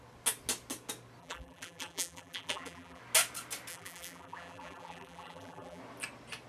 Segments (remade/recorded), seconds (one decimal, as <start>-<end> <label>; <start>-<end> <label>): 0.0-1.2 recorded; 1.2-3.0 remade; 3.0-3.7 recorded; 3.7-5.8 remade; 5.8-6.5 recorded